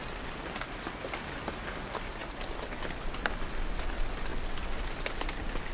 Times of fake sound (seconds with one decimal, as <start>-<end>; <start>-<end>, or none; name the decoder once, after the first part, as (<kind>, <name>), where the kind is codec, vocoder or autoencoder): none